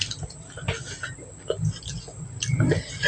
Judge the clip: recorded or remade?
recorded